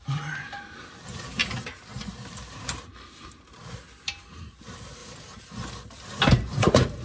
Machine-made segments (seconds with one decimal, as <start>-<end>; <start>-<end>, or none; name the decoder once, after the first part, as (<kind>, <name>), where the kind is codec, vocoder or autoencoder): 0.0-1.4 (vocoder, BigVGAN v2); 2.0-3.6; 4.5-5.0; 6.2-7.0